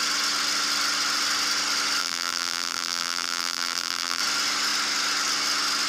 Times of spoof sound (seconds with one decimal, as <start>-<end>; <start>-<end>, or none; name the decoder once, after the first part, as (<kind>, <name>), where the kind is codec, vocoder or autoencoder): 2.0-4.2 (vocoder, BigVGAN v2)